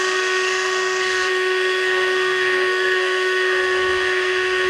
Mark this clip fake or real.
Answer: fake